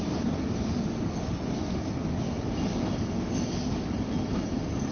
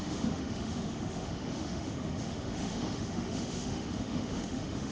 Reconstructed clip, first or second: second